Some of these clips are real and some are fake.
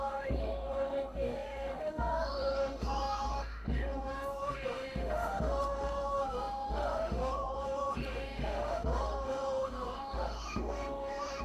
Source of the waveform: fake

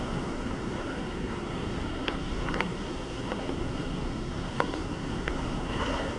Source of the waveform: fake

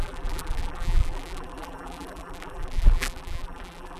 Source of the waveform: fake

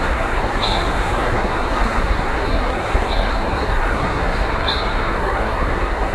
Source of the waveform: fake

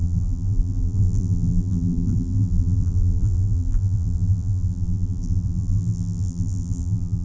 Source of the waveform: fake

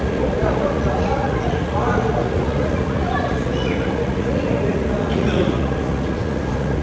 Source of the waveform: fake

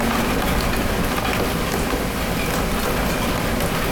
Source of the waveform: real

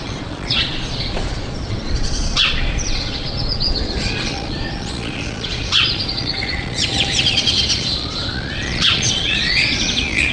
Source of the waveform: fake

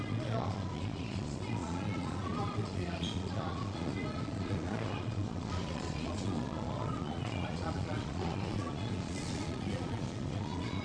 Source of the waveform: fake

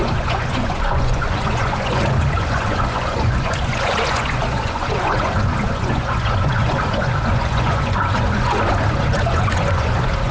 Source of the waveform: fake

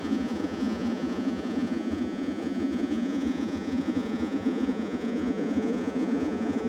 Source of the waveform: fake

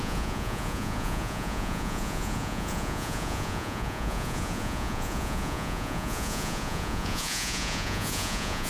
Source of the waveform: fake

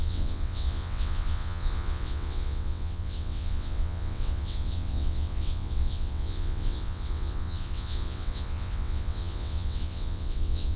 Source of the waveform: fake